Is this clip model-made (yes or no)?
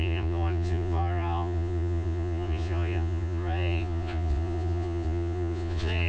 yes